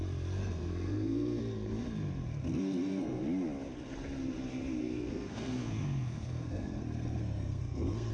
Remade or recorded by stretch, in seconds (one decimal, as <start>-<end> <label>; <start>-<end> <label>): 0.0-0.4 recorded; 0.4-1.4 remade; 1.4-2.5 recorded; 2.5-3.2 remade; 3.2-4.8 recorded; 4.8-8.1 remade